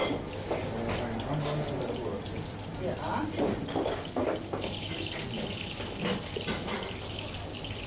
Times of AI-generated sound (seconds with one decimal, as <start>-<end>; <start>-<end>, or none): none